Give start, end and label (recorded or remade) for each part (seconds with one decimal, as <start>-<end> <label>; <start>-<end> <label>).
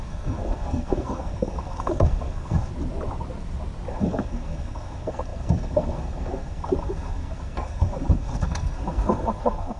0.0-2.7 remade; 2.7-3.9 recorded; 3.9-9.8 remade